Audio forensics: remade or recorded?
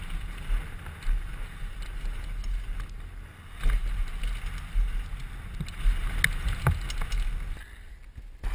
recorded